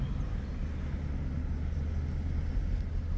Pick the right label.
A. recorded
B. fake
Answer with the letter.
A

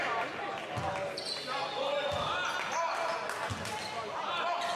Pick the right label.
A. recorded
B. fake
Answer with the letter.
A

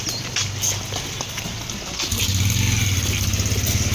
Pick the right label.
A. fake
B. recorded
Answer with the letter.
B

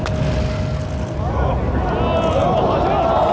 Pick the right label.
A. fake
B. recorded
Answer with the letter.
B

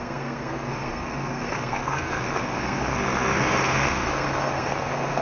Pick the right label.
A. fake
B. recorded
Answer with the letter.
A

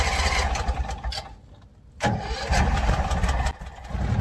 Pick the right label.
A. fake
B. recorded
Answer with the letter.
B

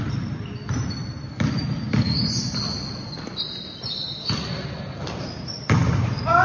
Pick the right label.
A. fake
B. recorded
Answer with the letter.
B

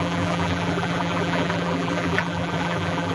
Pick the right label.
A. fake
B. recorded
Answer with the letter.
A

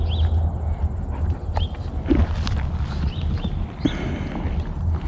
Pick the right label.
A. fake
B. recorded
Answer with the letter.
B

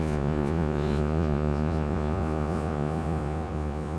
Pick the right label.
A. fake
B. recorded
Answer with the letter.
A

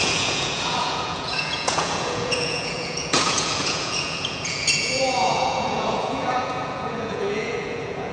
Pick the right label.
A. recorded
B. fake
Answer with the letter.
B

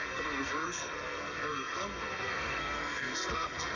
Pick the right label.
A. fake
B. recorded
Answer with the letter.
A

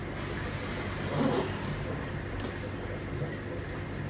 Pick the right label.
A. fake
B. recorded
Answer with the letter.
B